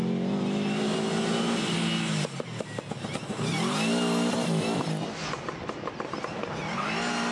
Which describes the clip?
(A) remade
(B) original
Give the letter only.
B